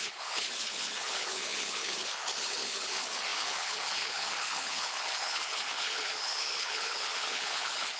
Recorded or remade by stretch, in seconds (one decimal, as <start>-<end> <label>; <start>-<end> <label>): 0.0-8.0 remade